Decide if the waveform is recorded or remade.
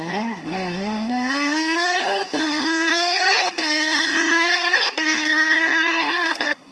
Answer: remade